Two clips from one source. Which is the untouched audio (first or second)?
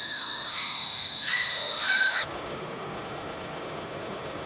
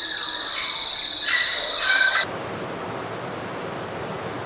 second